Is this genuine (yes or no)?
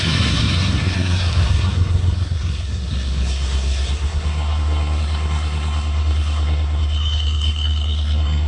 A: no